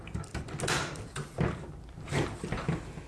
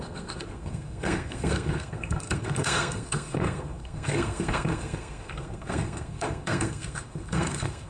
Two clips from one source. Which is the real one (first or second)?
first